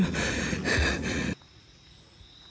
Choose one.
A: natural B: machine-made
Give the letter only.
B